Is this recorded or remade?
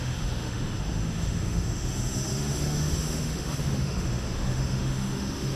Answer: remade